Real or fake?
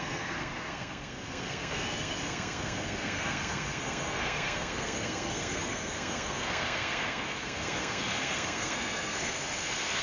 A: fake